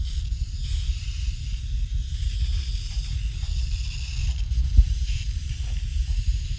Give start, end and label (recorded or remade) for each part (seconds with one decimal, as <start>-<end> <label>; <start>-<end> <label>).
0.0-4.2 recorded; 4.2-6.6 remade